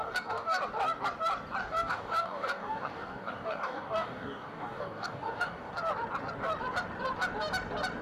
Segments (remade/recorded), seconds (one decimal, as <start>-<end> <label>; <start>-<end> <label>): 0.0-0.6 remade; 0.6-1.6 recorded; 1.6-5.7 remade; 5.7-8.0 recorded